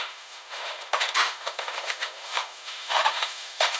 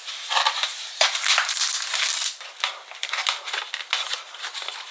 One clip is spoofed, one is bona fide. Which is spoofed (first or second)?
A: first